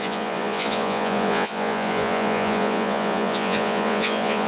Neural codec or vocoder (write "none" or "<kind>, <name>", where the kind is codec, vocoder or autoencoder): vocoder, Vocos